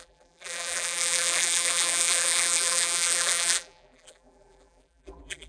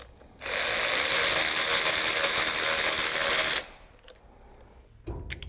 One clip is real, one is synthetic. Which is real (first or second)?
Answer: second